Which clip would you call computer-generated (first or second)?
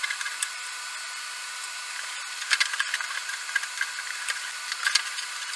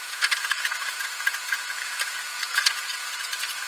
second